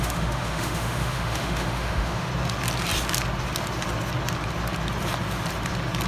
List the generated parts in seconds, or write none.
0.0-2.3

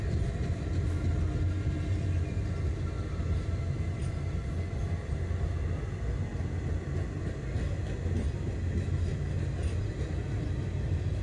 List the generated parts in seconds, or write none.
none

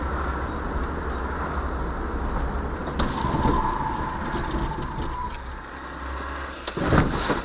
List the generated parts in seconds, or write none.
none

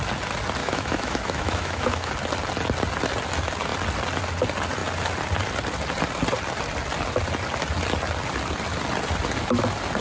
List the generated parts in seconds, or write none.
0.6-2.1

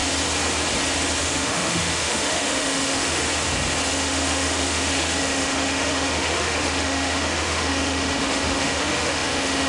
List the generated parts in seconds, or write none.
1.2-3.2; 3.9-9.7

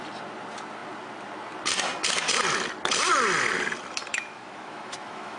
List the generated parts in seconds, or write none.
4.1-5.4